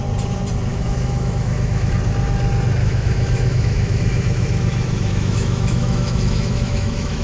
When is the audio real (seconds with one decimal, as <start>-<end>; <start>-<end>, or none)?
0.0-0.7; 1.9-2.8